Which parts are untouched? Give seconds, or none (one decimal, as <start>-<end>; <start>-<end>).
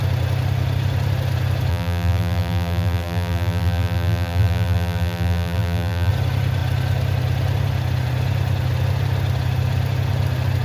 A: 0.0-1.7; 6.1-10.6